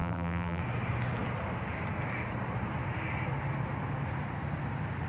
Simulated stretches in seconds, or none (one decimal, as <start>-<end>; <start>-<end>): 0.0-0.6